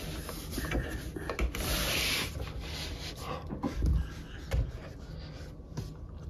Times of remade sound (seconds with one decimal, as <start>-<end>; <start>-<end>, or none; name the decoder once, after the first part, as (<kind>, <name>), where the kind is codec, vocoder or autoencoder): none